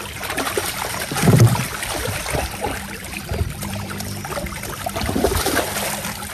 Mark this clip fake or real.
fake